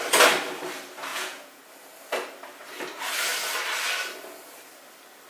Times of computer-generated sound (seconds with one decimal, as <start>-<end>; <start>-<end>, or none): 1.1-1.6